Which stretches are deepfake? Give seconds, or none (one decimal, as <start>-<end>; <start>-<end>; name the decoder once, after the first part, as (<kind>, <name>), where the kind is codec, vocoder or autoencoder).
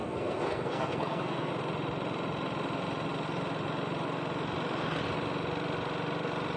0.0-1.5 (codec, SNAC)